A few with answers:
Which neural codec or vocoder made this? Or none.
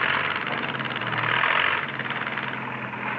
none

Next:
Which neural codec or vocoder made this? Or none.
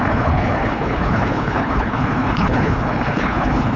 codec, HILCodec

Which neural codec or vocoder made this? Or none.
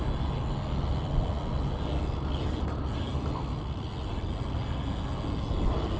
none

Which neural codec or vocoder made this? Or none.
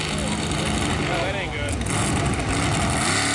none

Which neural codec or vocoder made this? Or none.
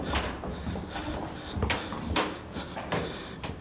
none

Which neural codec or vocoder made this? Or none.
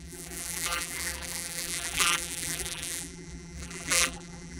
vocoder, BigVGAN v2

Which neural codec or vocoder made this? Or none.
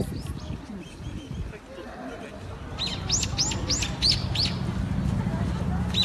none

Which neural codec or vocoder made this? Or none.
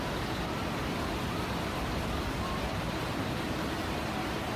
vocoder, BigVGAN v2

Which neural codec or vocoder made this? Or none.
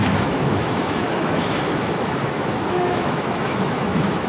autoencoder, DAC-VAE